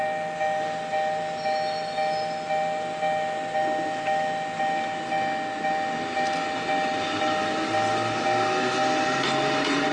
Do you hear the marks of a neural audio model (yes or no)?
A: no